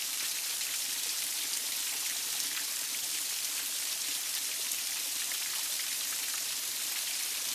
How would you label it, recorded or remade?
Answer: remade